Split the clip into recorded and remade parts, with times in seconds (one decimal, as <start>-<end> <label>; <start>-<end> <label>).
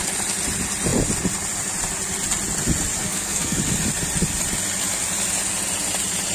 0.0-3.0 recorded; 3.0-3.6 remade; 3.6-6.3 recorded